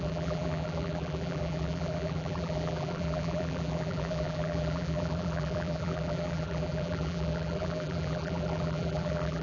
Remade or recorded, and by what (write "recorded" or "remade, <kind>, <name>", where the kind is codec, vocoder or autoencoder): remade, vocoder, BigVGAN v2